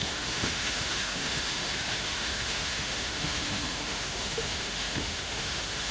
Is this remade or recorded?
remade